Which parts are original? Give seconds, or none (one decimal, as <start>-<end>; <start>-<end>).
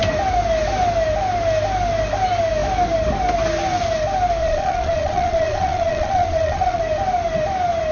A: 0.0-4.4; 6.8-7.9